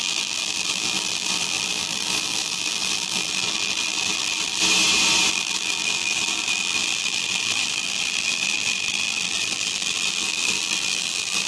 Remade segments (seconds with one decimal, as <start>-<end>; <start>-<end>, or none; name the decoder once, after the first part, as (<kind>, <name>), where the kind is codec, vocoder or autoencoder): 0.0-4.6 (vocoder, BigVGAN v2); 5.3-11.5